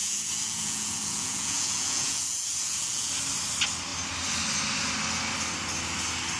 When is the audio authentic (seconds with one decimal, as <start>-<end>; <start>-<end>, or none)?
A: 3.1-6.4